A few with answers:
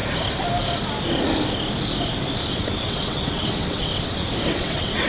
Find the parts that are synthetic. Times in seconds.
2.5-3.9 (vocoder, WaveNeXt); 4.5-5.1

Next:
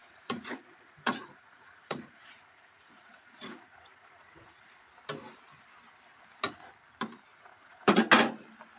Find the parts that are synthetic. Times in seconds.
0.0-4.8 (vocoder, Vocos); 7.3-8.0

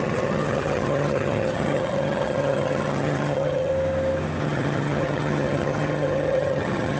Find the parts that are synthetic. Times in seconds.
0.0-3.7 (vocoder, HiFi-GAN); 4.4-7.0

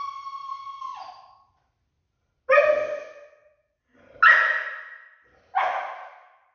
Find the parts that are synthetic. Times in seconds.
none

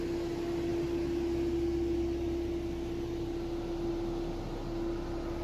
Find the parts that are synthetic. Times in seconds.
none